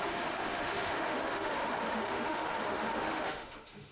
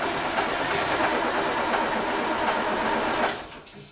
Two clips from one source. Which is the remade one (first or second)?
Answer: first